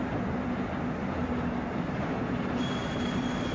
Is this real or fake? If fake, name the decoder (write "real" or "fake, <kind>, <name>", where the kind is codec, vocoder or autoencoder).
real